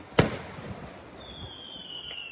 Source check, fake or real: real